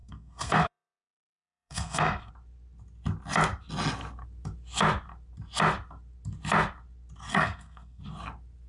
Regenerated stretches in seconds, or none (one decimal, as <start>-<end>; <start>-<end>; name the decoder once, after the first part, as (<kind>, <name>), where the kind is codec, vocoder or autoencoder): 0.0-2.3 (codec, SNAC); 7.3-8.0

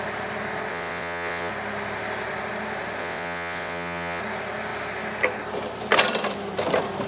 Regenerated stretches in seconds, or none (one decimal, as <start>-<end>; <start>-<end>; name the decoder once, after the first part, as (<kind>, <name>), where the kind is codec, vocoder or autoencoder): 0.7-1.5 (vocoder, WaveNeXt); 3.0-4.2

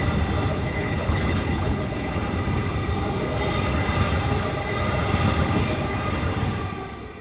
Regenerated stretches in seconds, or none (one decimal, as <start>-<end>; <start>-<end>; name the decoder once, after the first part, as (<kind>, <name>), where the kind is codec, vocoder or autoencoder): 0.5-2.2 (codec, HILCodec)

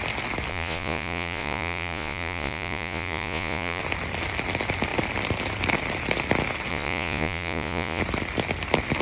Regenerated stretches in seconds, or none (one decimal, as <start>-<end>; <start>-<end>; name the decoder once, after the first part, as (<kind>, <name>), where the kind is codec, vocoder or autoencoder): 0.5-3.8 (vocoder, Vocos); 6.7-8.0

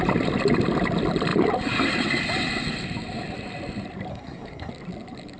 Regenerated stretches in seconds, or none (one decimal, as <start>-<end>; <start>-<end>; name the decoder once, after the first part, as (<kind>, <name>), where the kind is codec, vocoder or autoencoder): 4.1-4.7 (codec, SNAC)

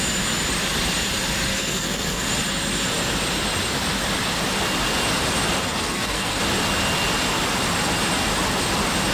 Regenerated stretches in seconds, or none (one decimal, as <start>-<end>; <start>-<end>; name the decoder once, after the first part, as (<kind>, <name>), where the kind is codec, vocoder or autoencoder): 1.5-2.3 (codec, SNAC); 5.6-6.4

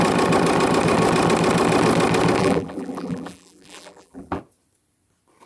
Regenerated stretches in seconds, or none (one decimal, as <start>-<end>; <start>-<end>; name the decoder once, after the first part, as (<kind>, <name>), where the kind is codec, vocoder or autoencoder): 2.4-4.4 (vocoder, BigVGAN v2)